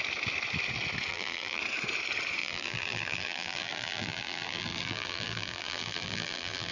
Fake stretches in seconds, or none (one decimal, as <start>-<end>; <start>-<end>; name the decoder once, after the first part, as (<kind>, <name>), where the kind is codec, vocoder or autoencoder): 1.1-1.6 (vocoder, BigVGAN v2); 2.4-6.7